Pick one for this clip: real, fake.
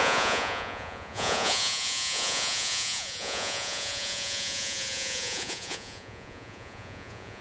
fake